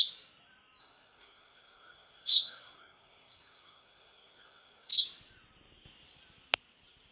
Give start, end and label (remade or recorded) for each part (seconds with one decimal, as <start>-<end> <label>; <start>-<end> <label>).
0.0-0.8 recorded; 0.8-4.9 remade; 4.9-7.1 recorded